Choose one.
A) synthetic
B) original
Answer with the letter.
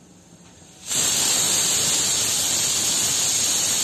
B